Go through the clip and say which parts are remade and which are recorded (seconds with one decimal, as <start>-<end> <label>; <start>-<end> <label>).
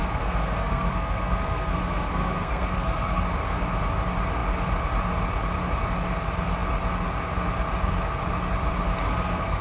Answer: 0.0-3.2 remade; 3.2-9.1 recorded; 9.1-9.6 remade